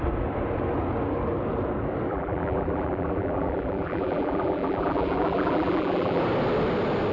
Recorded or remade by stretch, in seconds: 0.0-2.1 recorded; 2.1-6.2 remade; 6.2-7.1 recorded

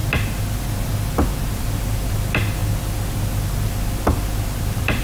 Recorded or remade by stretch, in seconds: 0.0-1.5 recorded; 1.5-2.6 remade; 2.6-4.6 recorded; 4.6-5.0 remade

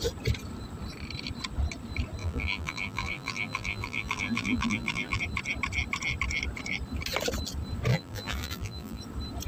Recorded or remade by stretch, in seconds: 0.0-2.2 recorded; 2.2-5.2 remade; 5.2-7.9 recorded; 7.9-9.0 remade; 9.0-9.5 recorded

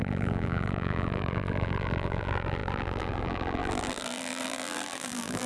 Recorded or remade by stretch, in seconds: 0.0-5.5 remade